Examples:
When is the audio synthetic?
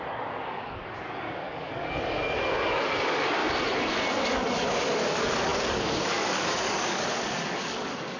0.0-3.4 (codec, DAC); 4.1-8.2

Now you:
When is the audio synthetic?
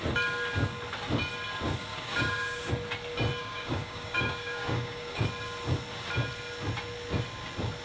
1.9-2.7 (codec, DAC); 3.4-5.3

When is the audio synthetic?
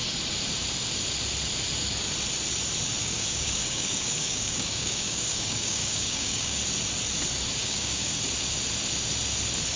3.0-6.6 (codec, DAC); 7.6-8.1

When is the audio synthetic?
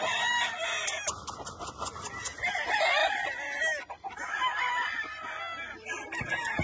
none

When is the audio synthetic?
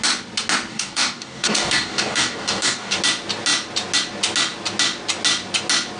0.7-3.0 (codec, DAC)